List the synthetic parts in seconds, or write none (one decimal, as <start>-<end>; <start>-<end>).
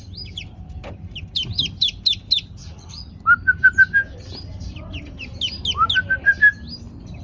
2.6-3.1